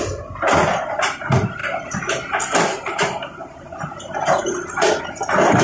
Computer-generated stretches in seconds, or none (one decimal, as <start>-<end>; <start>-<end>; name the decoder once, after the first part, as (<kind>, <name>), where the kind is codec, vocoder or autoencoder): none